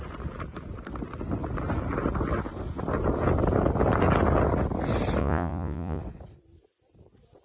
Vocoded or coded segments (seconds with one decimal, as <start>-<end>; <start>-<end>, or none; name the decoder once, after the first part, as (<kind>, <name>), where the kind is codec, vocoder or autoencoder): 5.2-6.0 (vocoder, Vocos)